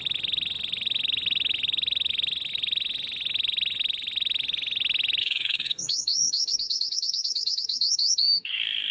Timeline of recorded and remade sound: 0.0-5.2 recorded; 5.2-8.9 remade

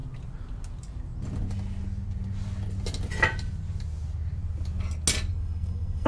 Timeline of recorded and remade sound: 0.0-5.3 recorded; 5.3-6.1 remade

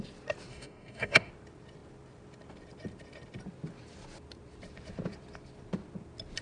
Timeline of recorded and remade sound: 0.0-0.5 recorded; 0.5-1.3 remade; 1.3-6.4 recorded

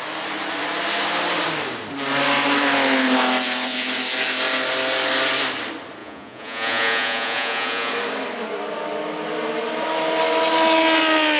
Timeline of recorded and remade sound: 0.0-6.0 recorded; 6.0-7.9 remade; 7.9-11.4 recorded